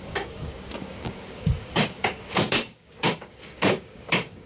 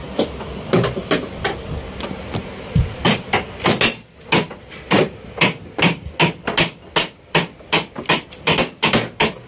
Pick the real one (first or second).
second